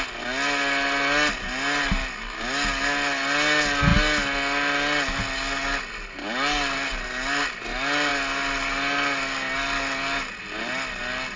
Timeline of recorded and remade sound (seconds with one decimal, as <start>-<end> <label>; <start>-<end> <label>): 0.0-11.4 recorded